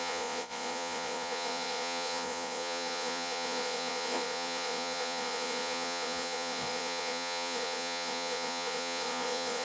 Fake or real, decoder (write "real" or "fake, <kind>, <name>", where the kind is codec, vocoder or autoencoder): fake, vocoder, Vocos